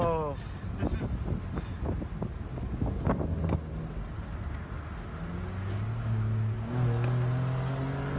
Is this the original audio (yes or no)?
yes